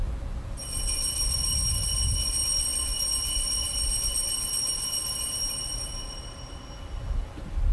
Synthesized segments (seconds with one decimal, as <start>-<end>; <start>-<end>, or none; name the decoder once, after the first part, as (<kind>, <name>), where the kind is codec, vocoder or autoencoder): none